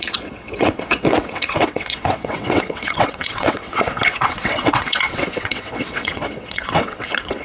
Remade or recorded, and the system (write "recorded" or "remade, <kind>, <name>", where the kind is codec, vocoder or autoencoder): remade, vocoder, WaveNeXt